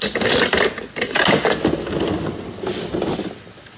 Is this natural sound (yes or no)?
yes